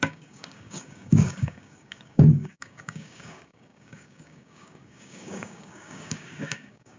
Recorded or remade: remade